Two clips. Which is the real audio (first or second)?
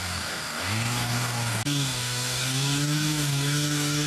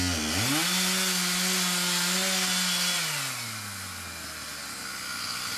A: second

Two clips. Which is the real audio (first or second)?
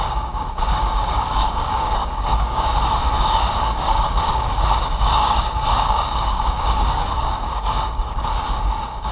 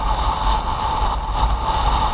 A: second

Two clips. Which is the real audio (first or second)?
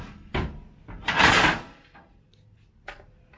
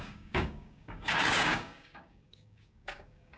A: first